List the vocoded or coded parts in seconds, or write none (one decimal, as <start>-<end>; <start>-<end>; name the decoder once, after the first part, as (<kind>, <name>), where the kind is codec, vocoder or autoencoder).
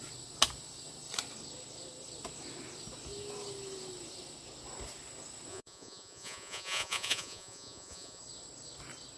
5.5-8.2 (vocoder, Vocos)